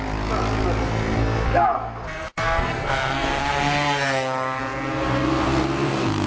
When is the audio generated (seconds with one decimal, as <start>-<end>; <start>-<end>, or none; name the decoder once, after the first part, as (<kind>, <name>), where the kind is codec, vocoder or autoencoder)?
0.8-4.6 (codec, SNAC)